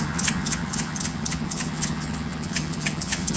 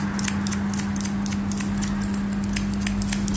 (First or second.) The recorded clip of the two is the second